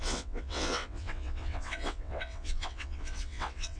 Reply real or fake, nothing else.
fake